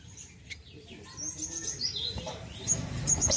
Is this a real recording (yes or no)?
no